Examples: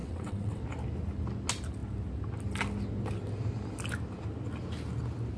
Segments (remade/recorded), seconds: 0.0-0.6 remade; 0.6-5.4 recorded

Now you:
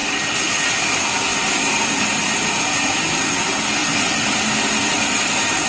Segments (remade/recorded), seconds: 0.0-0.8 remade; 0.8-1.3 recorded; 1.3-2.3 remade; 2.3-3.8 recorded; 3.8-5.7 remade

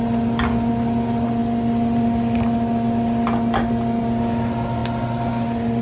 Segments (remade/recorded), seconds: 0.0-5.8 recorded

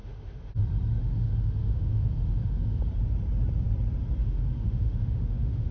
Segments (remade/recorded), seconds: 0.0-0.5 remade; 0.5-1.0 recorded; 1.0-2.8 remade; 2.8-4.2 recorded; 4.2-5.7 remade